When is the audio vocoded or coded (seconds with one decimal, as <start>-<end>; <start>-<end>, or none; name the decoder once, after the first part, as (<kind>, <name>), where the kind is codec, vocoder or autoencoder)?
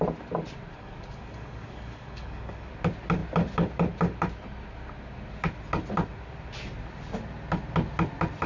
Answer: 0.7-2.7 (codec, DAC)